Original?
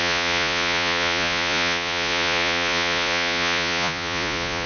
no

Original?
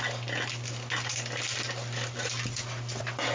yes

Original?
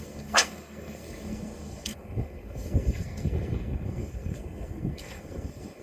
no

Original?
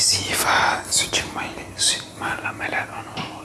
yes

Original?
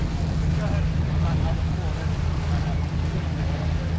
yes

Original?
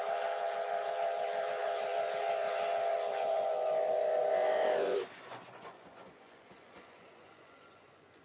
no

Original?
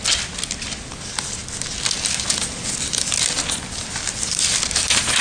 yes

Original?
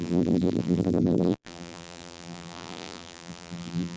no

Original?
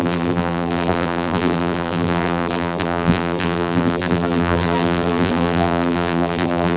no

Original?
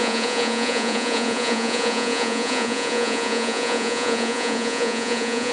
no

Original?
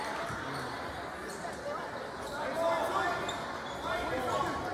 yes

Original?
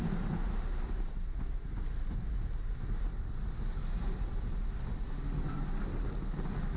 yes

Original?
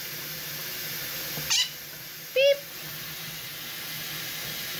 yes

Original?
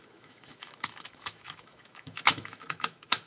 no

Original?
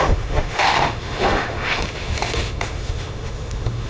no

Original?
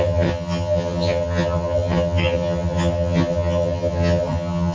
no